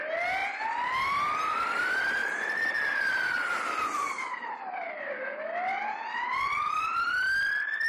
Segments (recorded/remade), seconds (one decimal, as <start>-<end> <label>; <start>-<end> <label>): 0.0-2.2 recorded; 2.2-4.9 remade; 4.9-7.9 recorded